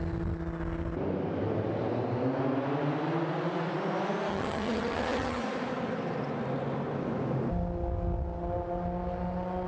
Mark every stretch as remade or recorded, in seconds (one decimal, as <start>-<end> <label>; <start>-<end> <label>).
0.0-4.3 recorded; 4.3-5.4 remade; 5.4-9.7 recorded